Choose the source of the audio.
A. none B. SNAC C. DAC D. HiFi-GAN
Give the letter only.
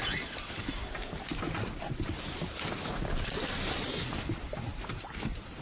A